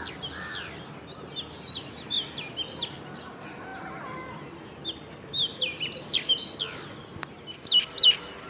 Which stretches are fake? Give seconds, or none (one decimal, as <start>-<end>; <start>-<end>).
none